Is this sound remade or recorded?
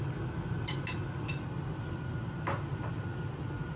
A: recorded